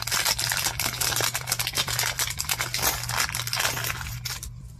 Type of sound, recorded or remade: recorded